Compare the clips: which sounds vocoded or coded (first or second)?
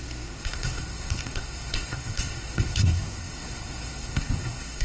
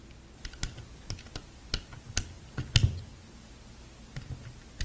first